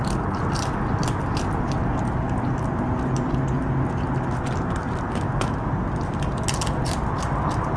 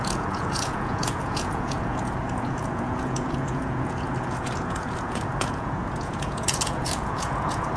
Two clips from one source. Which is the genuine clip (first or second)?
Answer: first